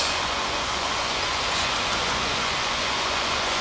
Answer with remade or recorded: remade